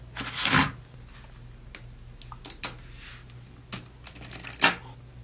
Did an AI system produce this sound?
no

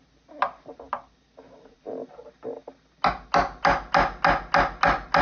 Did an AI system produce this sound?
no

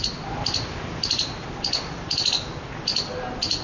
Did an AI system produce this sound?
no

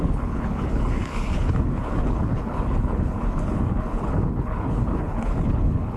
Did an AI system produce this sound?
yes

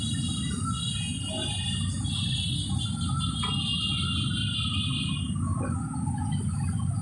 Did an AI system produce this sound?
no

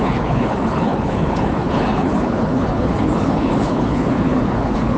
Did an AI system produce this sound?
yes